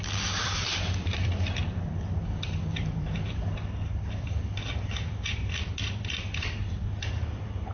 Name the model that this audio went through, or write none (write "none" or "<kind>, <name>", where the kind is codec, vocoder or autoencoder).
vocoder, BigVGAN v2